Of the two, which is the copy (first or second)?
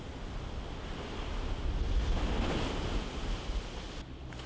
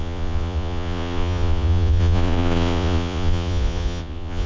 second